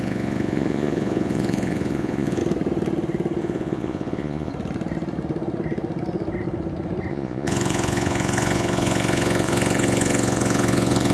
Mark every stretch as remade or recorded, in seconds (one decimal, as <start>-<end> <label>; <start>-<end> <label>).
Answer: 0.0-2.4 remade; 2.4-3.4 recorded; 3.4-4.5 remade; 4.5-7.1 recorded; 7.1-11.1 remade